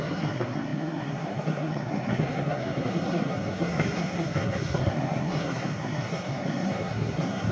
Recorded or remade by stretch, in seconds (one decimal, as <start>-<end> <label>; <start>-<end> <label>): 0.0-7.5 remade